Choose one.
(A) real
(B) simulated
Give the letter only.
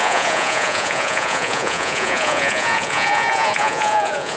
B